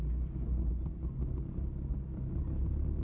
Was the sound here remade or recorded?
recorded